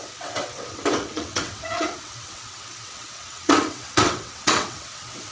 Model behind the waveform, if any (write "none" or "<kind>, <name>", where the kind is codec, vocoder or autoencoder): vocoder, WaveNeXt